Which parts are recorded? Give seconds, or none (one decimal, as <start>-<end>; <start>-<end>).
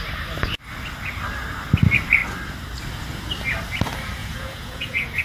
0.0-4.2